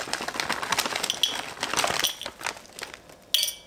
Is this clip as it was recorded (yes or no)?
yes